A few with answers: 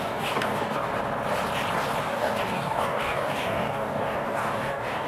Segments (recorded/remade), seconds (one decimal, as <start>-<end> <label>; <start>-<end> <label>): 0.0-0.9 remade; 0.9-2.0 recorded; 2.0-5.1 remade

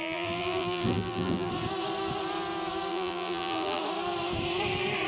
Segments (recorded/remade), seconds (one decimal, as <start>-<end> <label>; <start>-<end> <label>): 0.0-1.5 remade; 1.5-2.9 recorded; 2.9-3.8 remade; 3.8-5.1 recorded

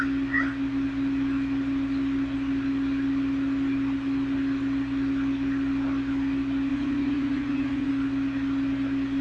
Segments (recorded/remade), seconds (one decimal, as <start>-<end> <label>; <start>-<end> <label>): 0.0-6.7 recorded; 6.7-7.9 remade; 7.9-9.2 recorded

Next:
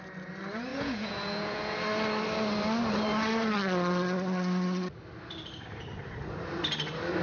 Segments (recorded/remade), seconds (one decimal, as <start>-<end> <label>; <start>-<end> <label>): 0.0-0.7 recorded; 0.7-1.8 remade; 1.8-7.2 recorded